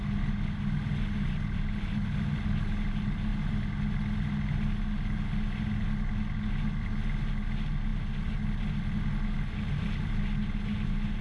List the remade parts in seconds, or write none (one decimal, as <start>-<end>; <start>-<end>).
none